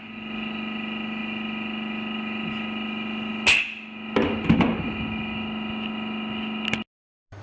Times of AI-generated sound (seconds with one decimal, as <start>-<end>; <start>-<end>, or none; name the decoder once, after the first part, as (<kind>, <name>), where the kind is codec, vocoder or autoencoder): none